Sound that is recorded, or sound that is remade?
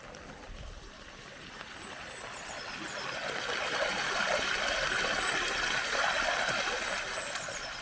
recorded